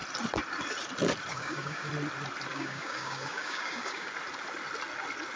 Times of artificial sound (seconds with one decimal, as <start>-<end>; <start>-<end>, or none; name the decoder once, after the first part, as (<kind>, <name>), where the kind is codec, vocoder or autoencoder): 1.3-1.9 (codec, DAC); 2.5-4.1

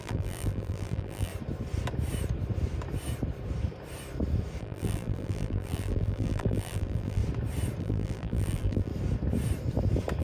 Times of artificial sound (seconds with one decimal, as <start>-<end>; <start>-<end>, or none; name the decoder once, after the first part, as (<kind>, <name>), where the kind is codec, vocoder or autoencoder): 0.0-1.3 (vocoder, BigVGAN v2); 4.6-7.2; 7.8-8.9

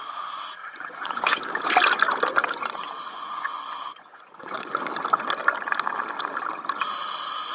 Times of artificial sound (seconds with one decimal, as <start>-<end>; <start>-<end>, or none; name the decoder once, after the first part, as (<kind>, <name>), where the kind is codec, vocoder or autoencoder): 0.6-1.4 (vocoder, Vocos); 3.1-4.9

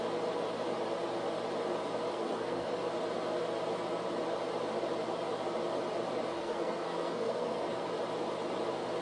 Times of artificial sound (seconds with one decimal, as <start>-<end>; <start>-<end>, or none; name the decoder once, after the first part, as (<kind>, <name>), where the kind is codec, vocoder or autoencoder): 2.1-2.7 (codec, SNAC); 6.3-7.9

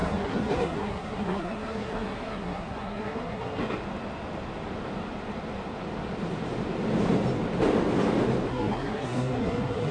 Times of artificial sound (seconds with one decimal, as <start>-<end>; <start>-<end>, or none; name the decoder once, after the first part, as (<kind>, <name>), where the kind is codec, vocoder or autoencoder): 0.0-3.6 (codec, SNAC); 8.5-9.9

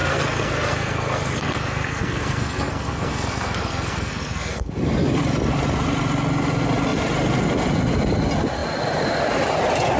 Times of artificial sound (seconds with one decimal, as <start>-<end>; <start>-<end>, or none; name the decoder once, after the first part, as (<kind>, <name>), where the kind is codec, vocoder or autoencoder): 0.0-4.7 (codec, SNAC)